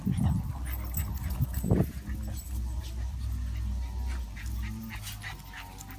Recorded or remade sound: recorded